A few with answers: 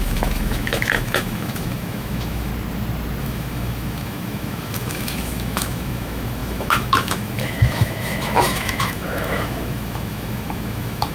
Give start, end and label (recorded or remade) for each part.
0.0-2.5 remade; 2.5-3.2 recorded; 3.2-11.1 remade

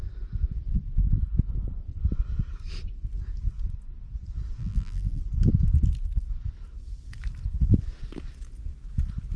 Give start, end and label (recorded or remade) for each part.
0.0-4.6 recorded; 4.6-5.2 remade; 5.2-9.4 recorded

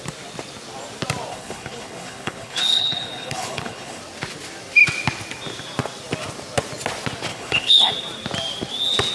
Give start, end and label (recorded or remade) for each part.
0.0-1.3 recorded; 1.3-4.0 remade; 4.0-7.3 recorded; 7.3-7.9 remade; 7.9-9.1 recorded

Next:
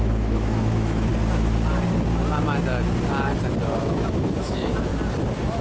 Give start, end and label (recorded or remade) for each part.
0.0-1.1 remade; 1.1-3.8 recorded; 3.8-4.9 remade; 4.9-5.6 recorded

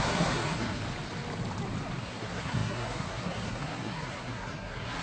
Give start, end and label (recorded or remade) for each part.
0.0-0.8 remade; 0.8-2.0 recorded; 2.0-5.0 remade

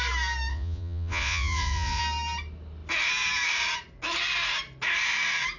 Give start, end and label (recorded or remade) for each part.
0.0-0.5 recorded; 0.5-2.0 remade; 2.0-5.6 recorded

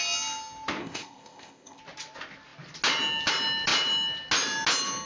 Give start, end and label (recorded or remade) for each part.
0.0-0.8 recorded; 0.8-1.8 remade; 1.8-5.1 recorded